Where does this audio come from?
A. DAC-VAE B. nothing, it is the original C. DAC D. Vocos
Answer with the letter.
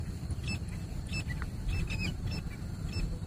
B